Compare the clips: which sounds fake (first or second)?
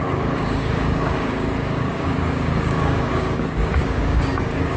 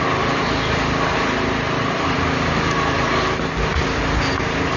first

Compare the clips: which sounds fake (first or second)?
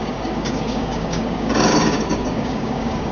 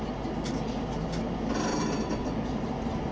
first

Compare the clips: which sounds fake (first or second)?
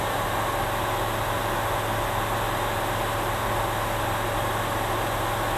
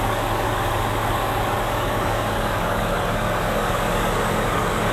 second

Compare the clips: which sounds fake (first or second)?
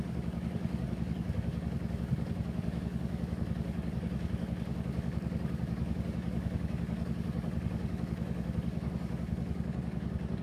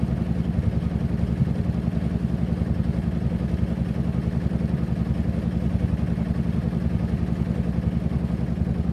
first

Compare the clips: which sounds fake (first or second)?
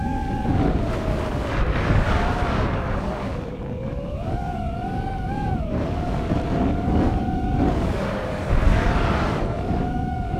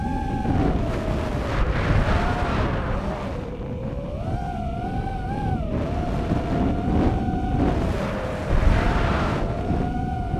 first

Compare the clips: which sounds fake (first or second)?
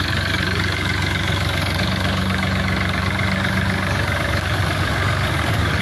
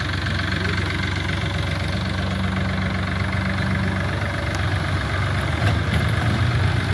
first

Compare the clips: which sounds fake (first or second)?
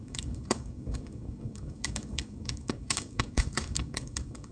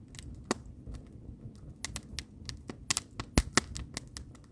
first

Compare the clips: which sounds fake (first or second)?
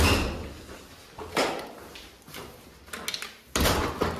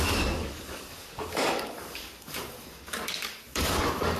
second